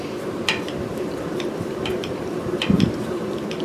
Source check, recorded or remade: remade